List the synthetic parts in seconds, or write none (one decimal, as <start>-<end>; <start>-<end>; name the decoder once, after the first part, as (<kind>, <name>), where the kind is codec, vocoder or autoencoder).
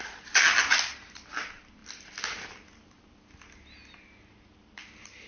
none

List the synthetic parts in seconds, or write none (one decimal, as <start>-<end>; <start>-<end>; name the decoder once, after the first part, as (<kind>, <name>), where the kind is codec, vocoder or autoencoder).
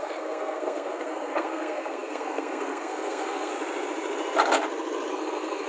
0.0-3.5 (codec, SNAC); 5.1-5.7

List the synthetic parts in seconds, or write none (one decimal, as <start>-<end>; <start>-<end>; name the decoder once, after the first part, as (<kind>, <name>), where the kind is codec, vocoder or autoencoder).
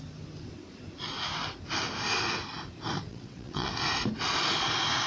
3.1-3.7 (vocoder, WaveNeXt)